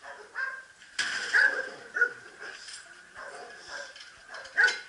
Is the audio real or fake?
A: fake